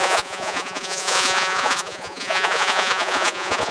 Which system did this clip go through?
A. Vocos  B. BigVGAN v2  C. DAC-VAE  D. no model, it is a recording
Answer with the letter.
A